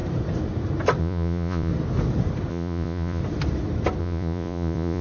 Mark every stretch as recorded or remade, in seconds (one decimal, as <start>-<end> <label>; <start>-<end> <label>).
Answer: 0.0-1.0 recorded; 1.0-1.7 remade; 1.7-2.5 recorded; 2.5-3.2 remade; 3.2-4.0 recorded; 4.0-5.0 remade